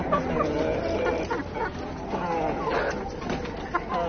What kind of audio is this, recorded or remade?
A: recorded